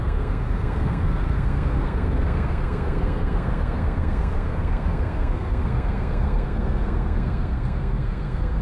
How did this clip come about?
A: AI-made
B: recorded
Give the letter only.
A